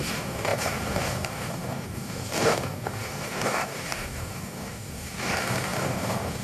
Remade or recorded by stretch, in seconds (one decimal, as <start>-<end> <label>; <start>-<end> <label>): 0.0-6.4 remade